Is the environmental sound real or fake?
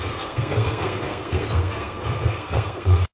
fake